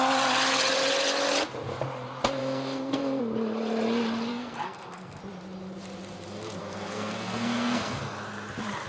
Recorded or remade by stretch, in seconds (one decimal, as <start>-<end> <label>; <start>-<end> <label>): 0.0-2.4 recorded; 2.4-3.2 remade; 3.2-4.3 recorded; 4.3-5.2 remade; 5.2-6.6 recorded; 6.6-8.0 remade; 8.0-8.9 recorded